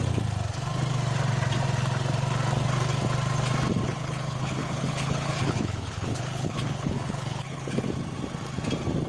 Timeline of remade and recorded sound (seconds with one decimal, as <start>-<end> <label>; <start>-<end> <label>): 0.0-3.8 recorded; 3.8-7.9 remade; 7.9-9.1 recorded